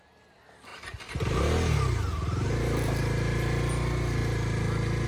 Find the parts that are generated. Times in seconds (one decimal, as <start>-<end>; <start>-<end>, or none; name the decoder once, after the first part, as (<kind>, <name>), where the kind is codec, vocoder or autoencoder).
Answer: none